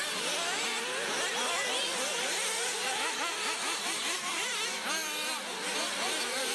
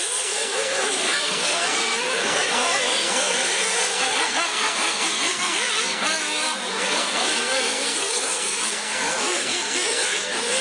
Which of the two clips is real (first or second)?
first